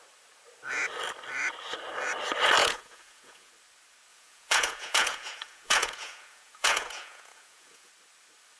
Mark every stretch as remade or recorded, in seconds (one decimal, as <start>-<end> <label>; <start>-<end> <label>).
0.0-2.6 recorded; 2.6-3.5 remade; 3.5-4.1 recorded; 4.1-7.9 remade; 7.9-8.6 recorded